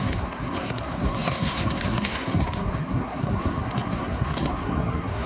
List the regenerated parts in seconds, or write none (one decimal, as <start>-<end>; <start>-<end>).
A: 0.0-5.3